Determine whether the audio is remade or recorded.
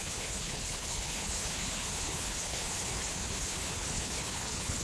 remade